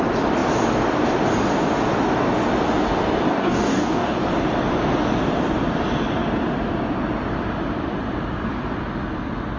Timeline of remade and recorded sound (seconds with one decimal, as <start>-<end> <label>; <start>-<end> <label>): 0.0-3.3 recorded; 3.3-4.3 remade; 4.3-9.6 recorded